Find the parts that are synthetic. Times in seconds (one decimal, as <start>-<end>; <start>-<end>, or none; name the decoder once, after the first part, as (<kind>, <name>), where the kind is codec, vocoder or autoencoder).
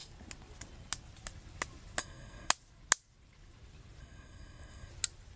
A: 2.0-2.5 (codec, SNAC); 4.0-4.9